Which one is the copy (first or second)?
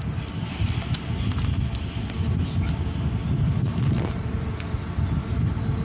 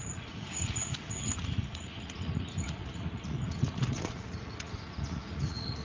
second